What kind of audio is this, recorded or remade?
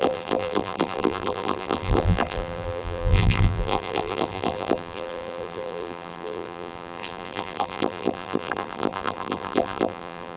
remade